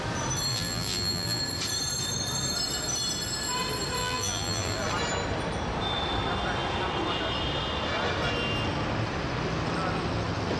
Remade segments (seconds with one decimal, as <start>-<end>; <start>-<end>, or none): 0.5-1.4; 4.0-4.9